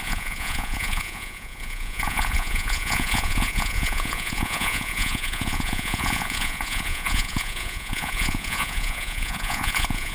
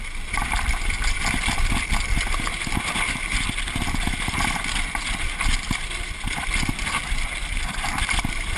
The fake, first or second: first